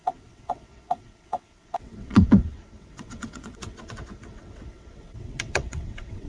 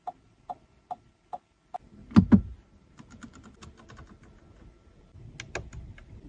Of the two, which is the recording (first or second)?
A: second